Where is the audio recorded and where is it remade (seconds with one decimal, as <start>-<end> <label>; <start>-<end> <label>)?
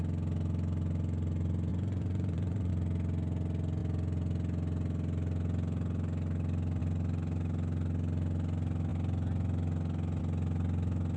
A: 0.0-1.7 recorded; 1.7-2.7 remade; 2.7-11.2 recorded